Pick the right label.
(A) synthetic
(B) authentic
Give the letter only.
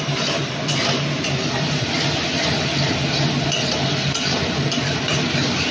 A